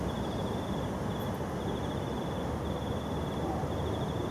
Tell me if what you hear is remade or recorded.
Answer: recorded